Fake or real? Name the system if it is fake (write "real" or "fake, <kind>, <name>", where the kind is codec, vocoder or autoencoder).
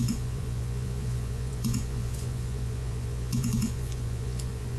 fake, vocoder, Vocos